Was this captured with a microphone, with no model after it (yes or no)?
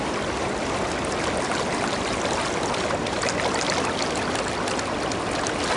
yes